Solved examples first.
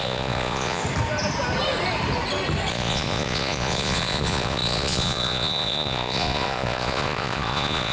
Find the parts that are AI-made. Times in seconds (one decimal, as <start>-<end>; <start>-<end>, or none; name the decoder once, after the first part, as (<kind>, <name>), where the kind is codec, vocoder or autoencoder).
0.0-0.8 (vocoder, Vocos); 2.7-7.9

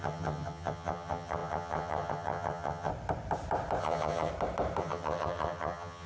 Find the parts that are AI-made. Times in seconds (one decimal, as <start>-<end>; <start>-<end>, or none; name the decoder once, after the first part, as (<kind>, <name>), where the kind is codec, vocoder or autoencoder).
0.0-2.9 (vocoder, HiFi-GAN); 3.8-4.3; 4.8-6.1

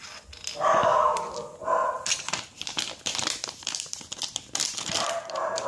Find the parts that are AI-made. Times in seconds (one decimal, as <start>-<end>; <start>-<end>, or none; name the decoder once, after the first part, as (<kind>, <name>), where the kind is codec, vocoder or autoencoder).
1.8-5.1 (vocoder, BigVGAN v2)

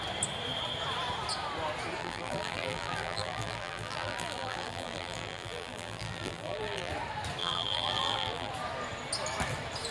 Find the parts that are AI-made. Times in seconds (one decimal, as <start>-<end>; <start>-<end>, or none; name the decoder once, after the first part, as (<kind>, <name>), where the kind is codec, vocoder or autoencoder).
2.0-6.9 (vocoder, BigVGAN v2); 7.4-8.5